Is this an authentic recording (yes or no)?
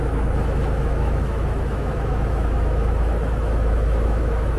no